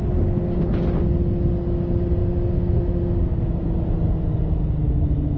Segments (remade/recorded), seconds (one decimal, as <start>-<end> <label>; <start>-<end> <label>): 0.0-5.4 recorded